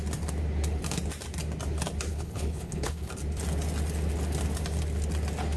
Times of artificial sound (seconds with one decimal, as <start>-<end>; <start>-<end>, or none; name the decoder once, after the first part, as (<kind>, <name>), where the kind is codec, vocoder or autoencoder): 2.1-3.1 (codec, HILCodec)